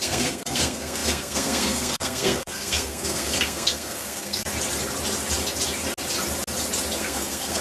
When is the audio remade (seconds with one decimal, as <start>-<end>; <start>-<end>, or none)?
0.0-4.5; 7.0-7.6